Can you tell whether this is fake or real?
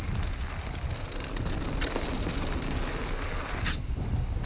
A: real